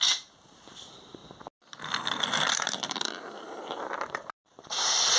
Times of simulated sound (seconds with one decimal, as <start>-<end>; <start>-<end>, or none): 0.0-1.2; 2.5-5.2